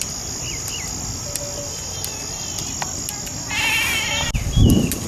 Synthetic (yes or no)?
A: no